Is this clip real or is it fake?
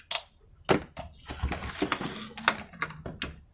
real